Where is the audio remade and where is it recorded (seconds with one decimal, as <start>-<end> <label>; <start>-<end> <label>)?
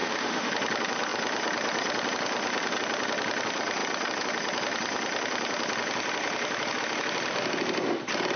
0.0-0.5 remade; 0.5-8.4 recorded